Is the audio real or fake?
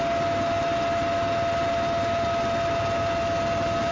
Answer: real